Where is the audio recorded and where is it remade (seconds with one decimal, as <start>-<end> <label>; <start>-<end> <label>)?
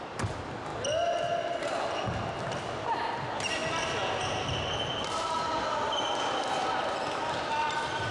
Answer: 0.0-0.7 remade; 0.7-2.6 recorded; 2.6-3.6 remade; 3.6-4.2 recorded; 4.2-8.1 remade